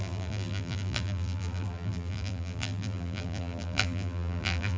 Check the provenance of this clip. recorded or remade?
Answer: remade